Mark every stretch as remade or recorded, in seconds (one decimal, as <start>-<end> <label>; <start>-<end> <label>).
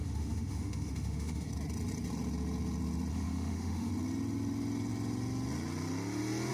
0.0-1.5 remade; 1.5-3.1 recorded; 3.1-3.9 remade; 3.9-6.5 recorded